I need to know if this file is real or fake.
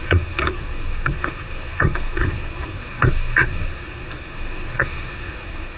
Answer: fake